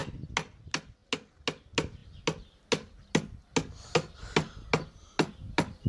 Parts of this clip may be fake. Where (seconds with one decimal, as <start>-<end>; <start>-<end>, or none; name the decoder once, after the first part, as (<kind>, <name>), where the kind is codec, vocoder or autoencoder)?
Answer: none